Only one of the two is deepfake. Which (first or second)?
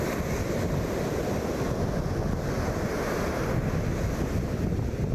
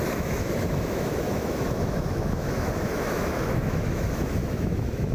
second